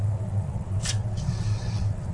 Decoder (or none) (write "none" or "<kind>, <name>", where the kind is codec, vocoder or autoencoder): vocoder, WaveNeXt